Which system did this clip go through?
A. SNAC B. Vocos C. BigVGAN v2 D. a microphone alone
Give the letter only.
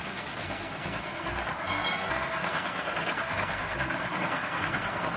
A